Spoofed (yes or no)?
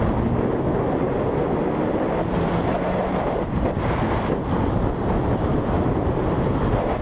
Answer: no